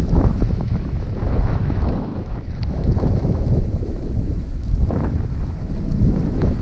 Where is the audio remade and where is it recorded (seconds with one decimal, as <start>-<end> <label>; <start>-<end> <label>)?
0.0-6.6 remade